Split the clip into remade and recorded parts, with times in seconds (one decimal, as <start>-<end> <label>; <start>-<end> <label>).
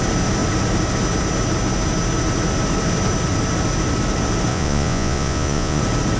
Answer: 0.0-4.5 recorded; 4.5-5.8 remade; 5.8-6.2 recorded